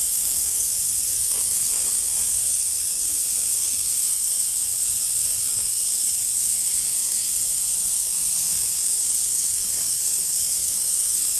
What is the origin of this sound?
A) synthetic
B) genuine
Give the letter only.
A